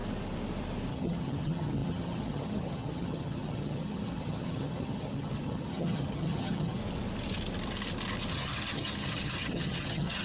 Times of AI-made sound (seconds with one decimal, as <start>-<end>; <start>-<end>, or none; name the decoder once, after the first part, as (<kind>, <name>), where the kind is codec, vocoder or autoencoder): 0.9-6.8 (vocoder, HiFi-GAN); 8.3-10.2